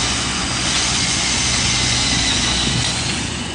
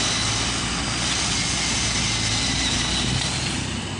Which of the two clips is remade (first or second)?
first